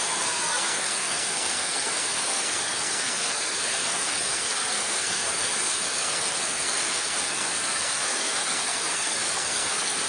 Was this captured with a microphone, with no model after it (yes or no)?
no